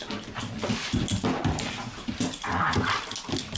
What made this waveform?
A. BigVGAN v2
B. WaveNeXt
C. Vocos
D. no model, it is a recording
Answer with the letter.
D